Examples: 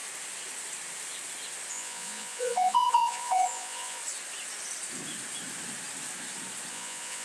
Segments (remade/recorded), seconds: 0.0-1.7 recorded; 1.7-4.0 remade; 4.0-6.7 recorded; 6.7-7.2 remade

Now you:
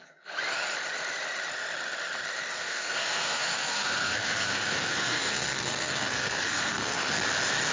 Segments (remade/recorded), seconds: 0.0-2.5 recorded; 2.5-7.1 remade; 7.1-7.7 recorded

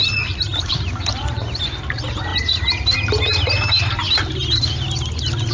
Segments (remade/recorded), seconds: 0.0-0.7 remade; 0.7-5.5 recorded

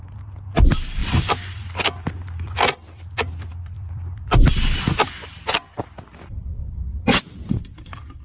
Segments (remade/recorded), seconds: 0.0-1.0 recorded; 1.0-4.3 remade; 4.3-8.2 recorded

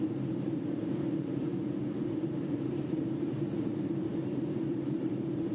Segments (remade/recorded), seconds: 0.0-1.5 remade; 1.5-2.2 recorded; 2.2-5.5 remade

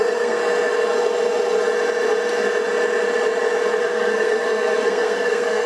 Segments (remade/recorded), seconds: 0.0-0.4 remade; 0.4-3.8 recorded; 3.8-5.7 remade

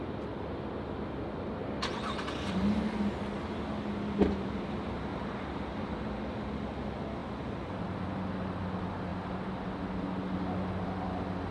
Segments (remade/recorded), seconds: 0.0-5.1 recorded; 5.1-6.0 remade; 6.0-11.5 recorded